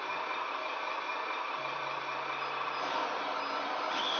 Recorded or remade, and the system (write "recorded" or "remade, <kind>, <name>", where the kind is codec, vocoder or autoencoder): recorded